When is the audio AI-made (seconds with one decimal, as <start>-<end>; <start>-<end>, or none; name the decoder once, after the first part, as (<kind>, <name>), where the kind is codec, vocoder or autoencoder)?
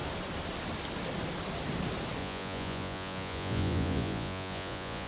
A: 2.2-5.1 (vocoder, Vocos)